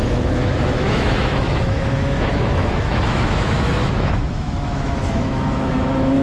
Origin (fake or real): fake